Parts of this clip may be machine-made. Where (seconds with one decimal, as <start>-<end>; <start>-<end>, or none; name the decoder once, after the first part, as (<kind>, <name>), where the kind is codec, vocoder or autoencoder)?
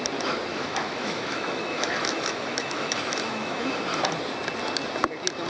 0.5-3.8 (autoencoder, DAC-VAE)